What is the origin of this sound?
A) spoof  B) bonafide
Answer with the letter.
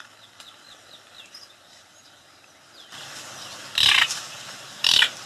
B